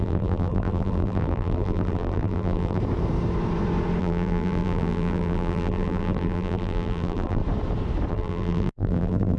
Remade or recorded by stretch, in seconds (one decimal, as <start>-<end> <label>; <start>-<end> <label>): 0.0-2.8 remade; 2.8-4.0 recorded; 4.0-7.4 remade; 7.4-8.1 recorded; 8.1-9.4 remade